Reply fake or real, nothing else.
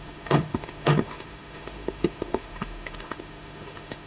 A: fake